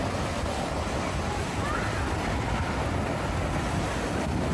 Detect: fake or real real